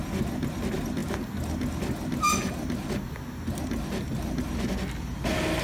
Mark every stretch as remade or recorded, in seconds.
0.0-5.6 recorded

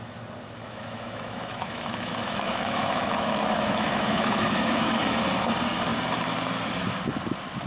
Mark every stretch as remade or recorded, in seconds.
0.0-0.6 recorded; 0.6-5.0 remade; 5.0-7.7 recorded